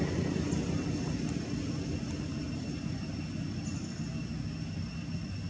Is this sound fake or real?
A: real